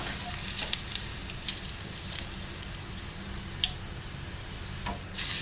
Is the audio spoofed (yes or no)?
no